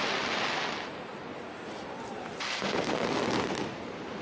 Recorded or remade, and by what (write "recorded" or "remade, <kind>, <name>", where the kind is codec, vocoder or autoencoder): recorded